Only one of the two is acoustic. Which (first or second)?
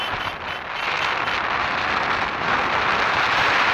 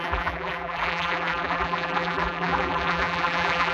first